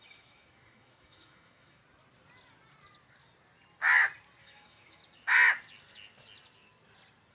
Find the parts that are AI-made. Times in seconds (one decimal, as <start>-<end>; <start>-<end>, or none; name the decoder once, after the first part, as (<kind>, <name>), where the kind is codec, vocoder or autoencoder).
0.0-1.8 (autoencoder, DAC-VAE); 4.4-5.0